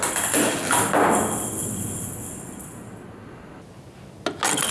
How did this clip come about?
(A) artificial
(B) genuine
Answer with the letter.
B